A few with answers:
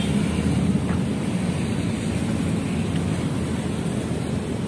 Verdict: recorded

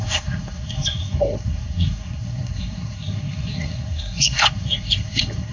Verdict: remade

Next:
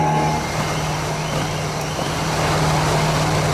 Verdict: recorded